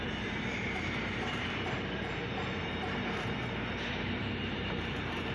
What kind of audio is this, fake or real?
fake